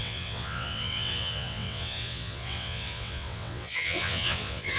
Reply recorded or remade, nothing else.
remade